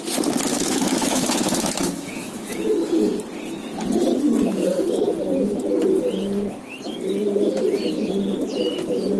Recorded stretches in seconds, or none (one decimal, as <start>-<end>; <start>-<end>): 0.0-0.5; 2.9-9.2